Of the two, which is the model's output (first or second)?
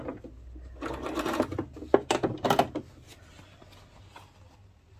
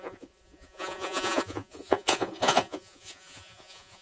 second